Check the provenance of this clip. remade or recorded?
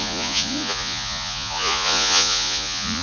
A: remade